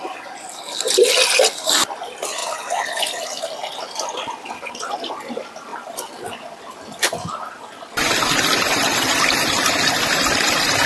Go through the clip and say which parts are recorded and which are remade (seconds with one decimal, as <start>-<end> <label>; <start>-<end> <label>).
0.0-10.9 recorded